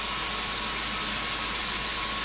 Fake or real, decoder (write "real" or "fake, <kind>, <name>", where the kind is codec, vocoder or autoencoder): real